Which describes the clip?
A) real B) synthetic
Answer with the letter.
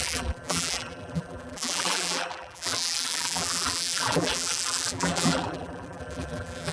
B